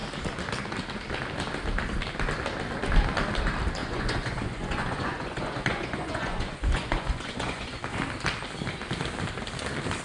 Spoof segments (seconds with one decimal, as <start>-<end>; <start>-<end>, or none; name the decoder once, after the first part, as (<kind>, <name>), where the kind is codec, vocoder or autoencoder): 3.8-7.8 (vocoder, Vocos)